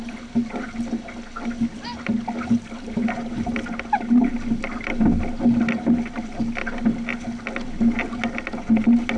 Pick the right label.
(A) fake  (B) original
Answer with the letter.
B